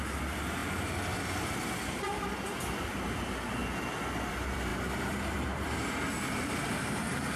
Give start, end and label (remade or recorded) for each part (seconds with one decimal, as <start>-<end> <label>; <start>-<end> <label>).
0.0-3.6 remade; 3.6-4.3 recorded; 4.3-7.4 remade